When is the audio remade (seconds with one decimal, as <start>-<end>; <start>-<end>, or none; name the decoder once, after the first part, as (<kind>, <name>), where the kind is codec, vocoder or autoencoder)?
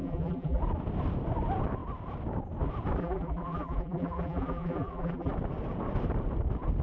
0.0-0.6 (vocoder, BigVGAN v2); 3.0-5.3